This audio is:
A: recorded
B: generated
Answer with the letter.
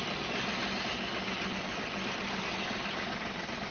A